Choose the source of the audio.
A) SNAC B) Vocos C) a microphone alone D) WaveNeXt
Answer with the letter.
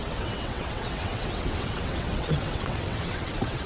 D